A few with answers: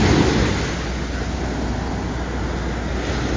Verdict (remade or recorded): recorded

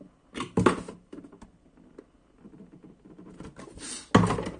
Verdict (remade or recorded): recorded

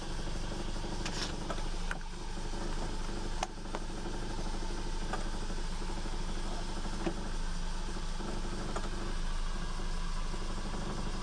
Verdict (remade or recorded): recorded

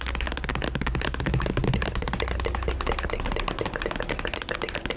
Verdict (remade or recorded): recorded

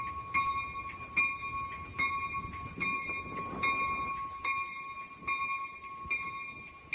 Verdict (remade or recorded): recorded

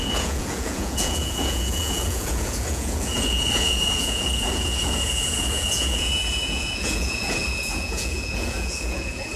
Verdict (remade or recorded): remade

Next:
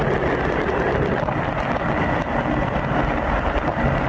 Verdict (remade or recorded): recorded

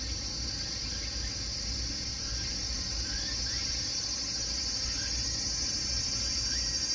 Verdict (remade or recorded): recorded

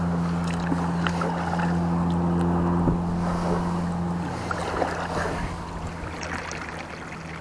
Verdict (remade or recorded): recorded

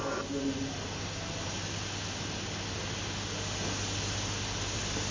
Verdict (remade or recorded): recorded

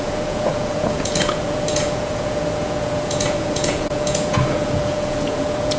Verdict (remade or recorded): remade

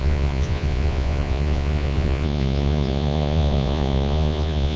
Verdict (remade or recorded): remade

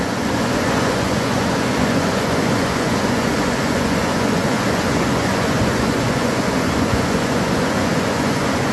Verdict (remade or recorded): remade